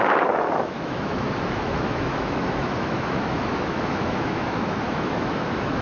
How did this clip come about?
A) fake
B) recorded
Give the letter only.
A